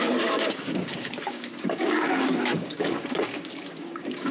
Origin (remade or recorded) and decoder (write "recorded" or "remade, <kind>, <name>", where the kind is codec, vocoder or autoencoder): remade, codec, DAC